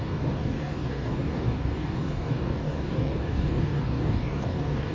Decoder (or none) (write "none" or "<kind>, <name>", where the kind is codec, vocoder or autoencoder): codec, DAC